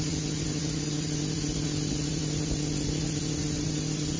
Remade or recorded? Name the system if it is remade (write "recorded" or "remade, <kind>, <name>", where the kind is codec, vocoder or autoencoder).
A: recorded